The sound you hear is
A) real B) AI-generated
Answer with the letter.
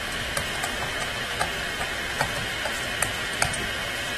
A